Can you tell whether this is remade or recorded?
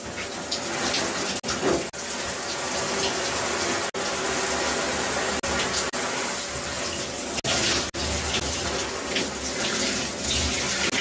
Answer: recorded